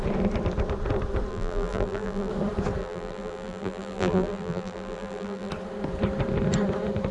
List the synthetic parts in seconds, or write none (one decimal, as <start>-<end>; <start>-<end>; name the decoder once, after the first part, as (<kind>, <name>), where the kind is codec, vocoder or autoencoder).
1.3-2.3 (vocoder, BigVGAN v2); 2.8-5.5